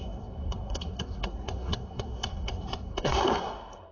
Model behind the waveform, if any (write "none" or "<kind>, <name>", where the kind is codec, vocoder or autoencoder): codec, SNAC